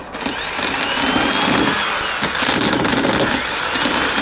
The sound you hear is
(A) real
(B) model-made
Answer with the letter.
A